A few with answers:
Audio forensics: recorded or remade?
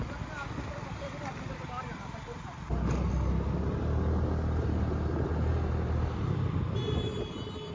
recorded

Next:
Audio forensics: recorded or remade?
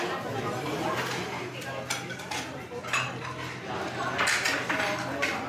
recorded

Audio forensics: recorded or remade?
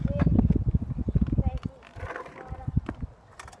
recorded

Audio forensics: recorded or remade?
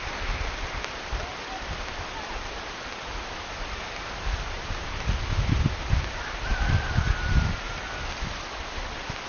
remade